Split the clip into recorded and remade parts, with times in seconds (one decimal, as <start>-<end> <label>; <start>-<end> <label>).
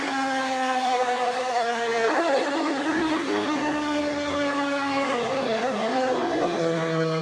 0.0-7.2 remade